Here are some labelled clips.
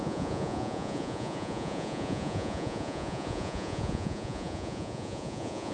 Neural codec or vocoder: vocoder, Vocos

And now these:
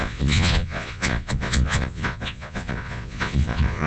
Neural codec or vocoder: vocoder, Vocos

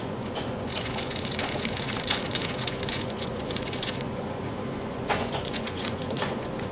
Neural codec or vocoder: vocoder, Vocos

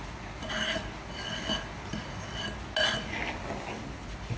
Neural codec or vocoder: none